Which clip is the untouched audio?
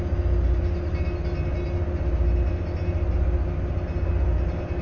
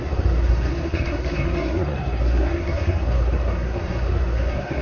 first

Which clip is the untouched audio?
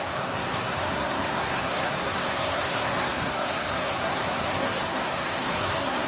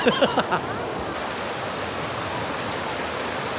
second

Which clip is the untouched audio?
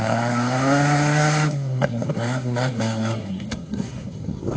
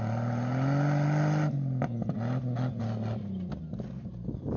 second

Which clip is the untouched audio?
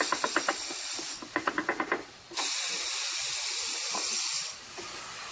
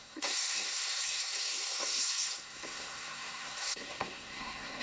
first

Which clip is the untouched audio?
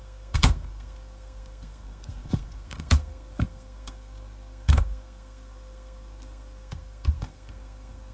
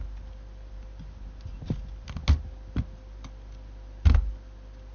second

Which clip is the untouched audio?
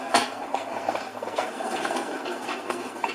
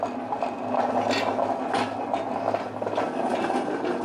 second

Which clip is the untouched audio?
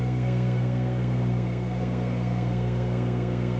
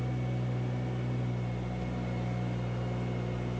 second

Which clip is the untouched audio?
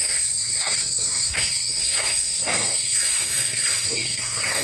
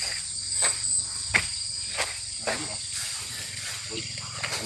second